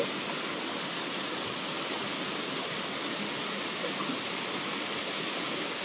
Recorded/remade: recorded